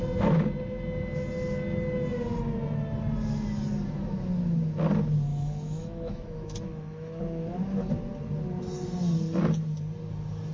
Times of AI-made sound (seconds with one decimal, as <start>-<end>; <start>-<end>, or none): 5.3-7.2